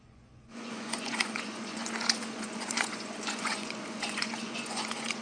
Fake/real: fake